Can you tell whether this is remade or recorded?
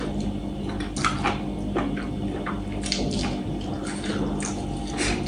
recorded